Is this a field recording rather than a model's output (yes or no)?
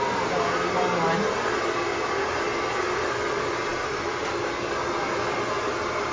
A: yes